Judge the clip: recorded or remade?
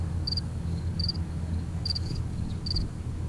remade